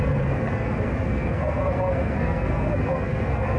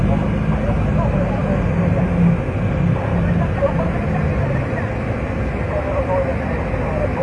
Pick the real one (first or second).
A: second